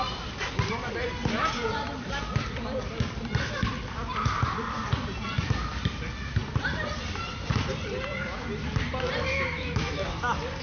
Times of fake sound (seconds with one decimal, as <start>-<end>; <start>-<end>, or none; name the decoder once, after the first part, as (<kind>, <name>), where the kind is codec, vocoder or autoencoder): 9.3-10.1 (autoencoder, DAC-VAE)